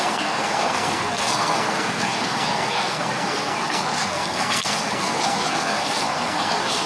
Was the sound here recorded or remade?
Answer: remade